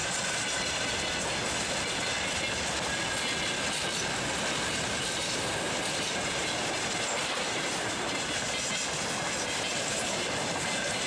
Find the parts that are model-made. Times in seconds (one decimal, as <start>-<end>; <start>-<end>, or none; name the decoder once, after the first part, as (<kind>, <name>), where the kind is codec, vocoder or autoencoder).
5.0-8.7 (vocoder, BigVGAN v2); 9.4-11.1